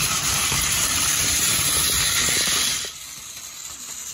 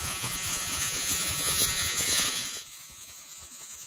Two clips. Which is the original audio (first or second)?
first